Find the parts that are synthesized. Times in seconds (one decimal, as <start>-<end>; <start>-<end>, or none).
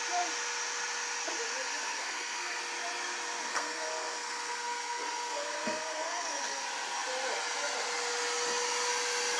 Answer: 1.9-2.6; 3.5-6.4